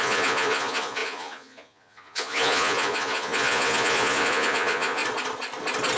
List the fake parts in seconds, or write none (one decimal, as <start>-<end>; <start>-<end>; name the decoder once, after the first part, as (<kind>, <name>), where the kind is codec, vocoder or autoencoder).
0.0-5.0 (vocoder, Vocos)